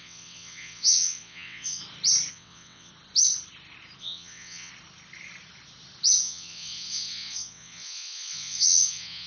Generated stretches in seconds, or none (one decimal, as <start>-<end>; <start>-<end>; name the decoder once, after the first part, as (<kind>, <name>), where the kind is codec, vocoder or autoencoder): 0.0-1.8 (vocoder, WaveNeXt); 2.3-2.9; 4.0-4.7; 6.2-9.3